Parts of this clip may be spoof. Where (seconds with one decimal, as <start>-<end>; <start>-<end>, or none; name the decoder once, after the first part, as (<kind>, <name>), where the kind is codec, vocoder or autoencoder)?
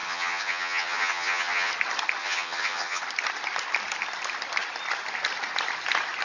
0.0-1.7 (vocoder, HiFi-GAN); 2.2-3.0